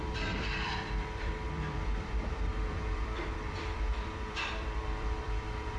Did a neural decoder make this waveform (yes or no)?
yes